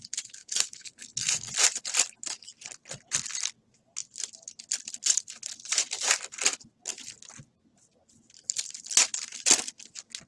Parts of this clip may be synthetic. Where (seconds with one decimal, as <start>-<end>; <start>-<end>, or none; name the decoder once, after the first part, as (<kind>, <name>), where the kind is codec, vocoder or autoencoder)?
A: 0.4-1.5 (codec, SNAC)